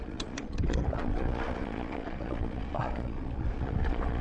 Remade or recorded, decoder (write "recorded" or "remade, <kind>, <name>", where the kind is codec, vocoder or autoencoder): remade, vocoder, Vocos